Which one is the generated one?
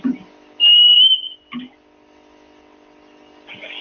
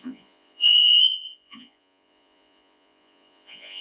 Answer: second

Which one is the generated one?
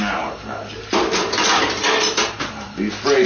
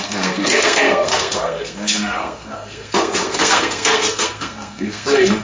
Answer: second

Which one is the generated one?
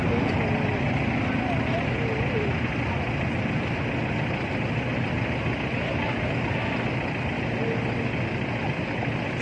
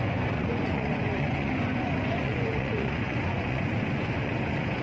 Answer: second